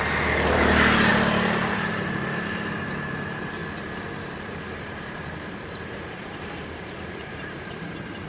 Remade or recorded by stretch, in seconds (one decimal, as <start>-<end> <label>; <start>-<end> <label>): 0.0-3.6 remade; 3.6-4.5 recorded; 4.5-8.3 remade